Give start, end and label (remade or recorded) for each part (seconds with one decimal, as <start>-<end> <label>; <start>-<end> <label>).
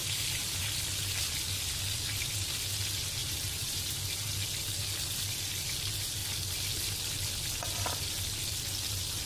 0.0-0.7 remade; 0.7-3.2 recorded; 3.2-4.0 remade; 4.0-9.3 recorded